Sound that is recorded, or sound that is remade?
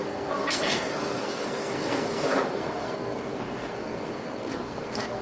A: remade